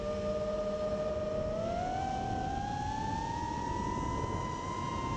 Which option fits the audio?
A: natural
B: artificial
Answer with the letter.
A